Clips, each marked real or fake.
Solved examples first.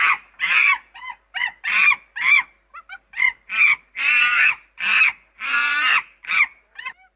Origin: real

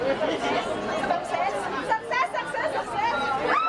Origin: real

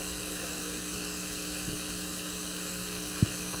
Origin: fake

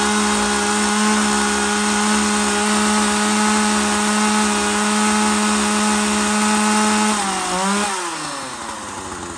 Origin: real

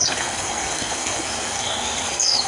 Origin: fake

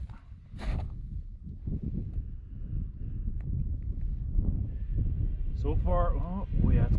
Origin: real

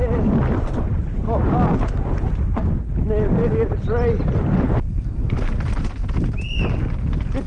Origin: real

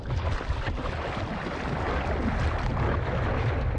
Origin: real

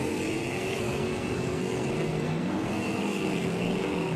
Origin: fake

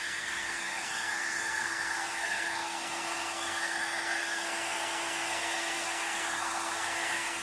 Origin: fake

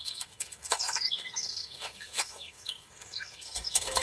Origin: fake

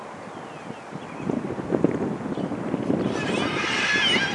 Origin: real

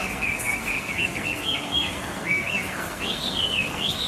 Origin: fake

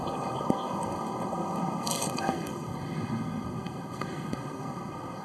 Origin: fake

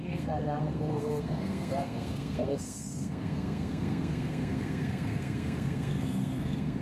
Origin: fake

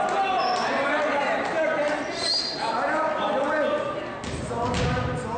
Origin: real